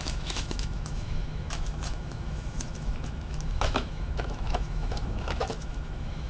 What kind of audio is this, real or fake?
fake